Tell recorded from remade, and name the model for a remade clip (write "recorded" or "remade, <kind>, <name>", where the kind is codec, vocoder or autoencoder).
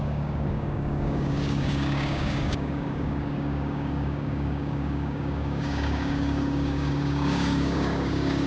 remade, codec, DAC